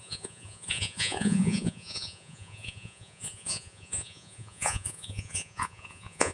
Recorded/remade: remade